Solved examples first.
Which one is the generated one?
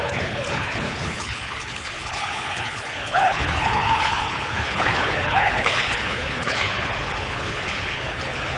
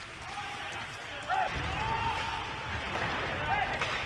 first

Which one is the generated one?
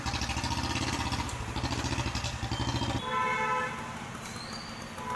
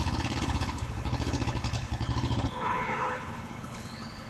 second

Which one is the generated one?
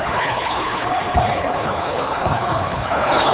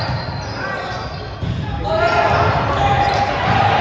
first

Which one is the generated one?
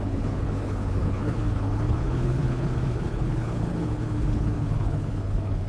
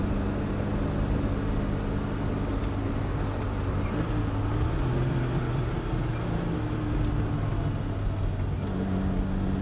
first